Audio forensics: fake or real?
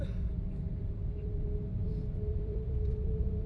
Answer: fake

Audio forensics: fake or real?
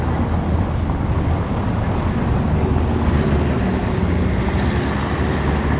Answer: real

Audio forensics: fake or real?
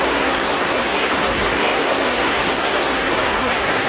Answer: fake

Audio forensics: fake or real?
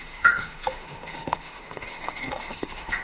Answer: fake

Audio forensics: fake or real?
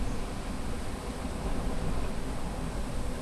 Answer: real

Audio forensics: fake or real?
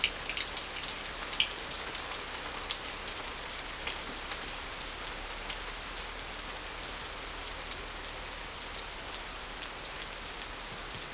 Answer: real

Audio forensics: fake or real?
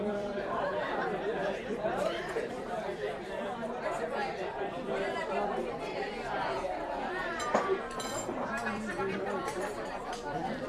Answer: fake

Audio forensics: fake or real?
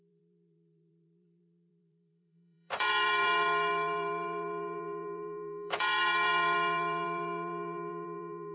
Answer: fake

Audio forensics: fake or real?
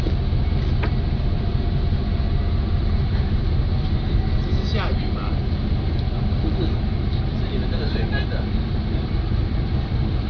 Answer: fake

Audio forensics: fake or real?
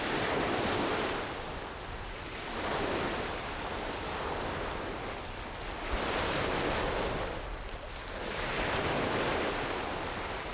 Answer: real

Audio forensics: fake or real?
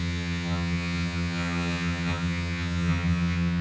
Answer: fake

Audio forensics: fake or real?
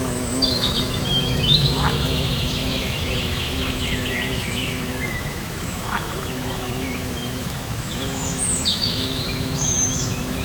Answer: fake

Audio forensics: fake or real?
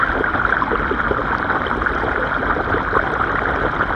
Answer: real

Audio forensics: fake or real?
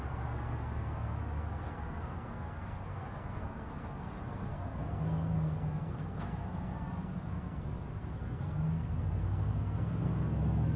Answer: fake